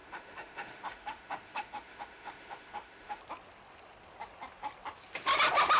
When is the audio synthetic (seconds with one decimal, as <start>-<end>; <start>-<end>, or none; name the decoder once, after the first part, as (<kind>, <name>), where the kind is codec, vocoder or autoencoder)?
0.0-3.2 (autoencoder, DAC-VAE)

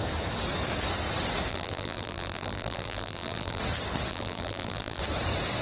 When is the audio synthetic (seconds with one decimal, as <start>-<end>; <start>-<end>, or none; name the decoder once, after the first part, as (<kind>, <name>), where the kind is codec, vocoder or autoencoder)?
1.5-3.6 (vocoder, BigVGAN v2); 4.1-5.0

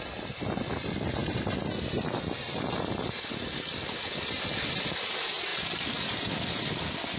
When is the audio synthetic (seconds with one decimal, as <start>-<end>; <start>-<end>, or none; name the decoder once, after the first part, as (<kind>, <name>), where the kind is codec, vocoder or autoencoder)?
none

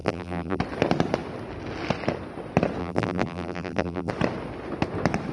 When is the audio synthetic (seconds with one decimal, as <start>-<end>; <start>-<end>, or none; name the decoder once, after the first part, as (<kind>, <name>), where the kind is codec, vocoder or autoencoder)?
0.0-0.6 (vocoder, BigVGAN v2); 2.8-4.1